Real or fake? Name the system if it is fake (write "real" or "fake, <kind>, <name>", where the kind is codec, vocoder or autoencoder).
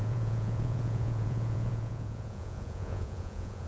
fake, vocoder, Vocos